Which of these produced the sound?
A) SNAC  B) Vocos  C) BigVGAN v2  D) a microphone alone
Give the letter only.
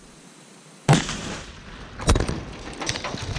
D